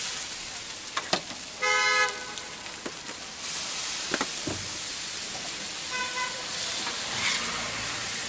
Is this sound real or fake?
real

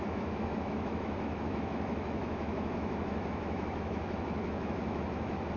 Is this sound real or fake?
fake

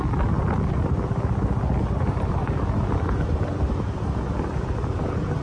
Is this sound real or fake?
fake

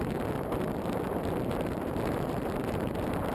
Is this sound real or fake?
fake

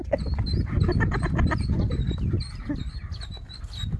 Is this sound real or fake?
real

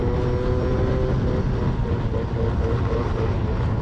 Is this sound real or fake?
real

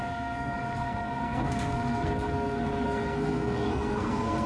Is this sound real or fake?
fake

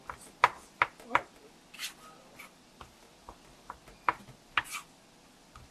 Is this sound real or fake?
real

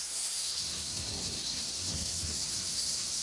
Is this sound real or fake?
fake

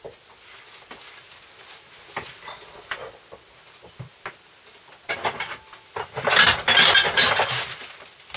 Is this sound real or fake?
real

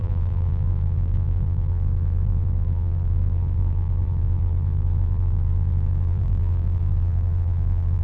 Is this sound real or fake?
fake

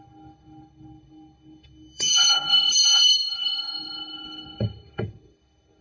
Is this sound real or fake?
fake